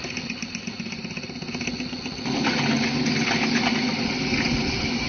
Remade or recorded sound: recorded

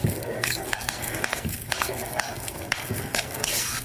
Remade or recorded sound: remade